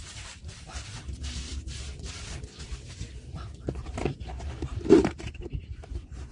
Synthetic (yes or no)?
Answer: yes